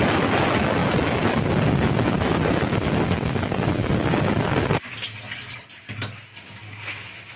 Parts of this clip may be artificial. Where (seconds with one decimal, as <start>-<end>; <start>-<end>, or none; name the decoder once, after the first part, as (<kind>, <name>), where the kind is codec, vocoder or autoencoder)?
none